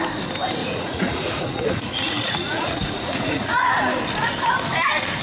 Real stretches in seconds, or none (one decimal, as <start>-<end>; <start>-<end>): 0.0-0.6; 3.7-5.2